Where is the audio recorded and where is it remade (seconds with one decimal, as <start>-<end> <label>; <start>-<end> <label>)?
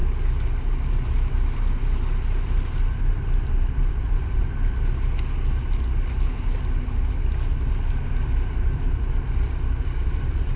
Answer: 0.0-3.5 recorded; 3.5-4.4 remade; 4.4-7.8 recorded; 7.8-10.6 remade